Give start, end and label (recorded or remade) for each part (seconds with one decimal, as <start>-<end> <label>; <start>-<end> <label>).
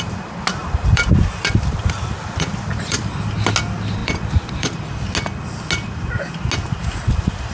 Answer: 0.0-0.6 recorded; 0.6-3.1 remade; 3.1-4.0 recorded; 4.0-5.1 remade; 5.1-7.5 recorded